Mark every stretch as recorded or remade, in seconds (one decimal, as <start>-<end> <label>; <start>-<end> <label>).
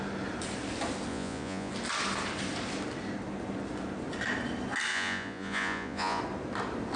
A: 0.0-1.1 recorded; 1.1-1.7 remade; 1.7-4.9 recorded; 4.9-6.2 remade; 6.2-7.0 recorded